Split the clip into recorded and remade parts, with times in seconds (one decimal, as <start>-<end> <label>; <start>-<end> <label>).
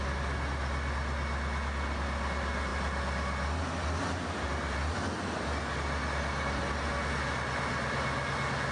0.0-8.7 recorded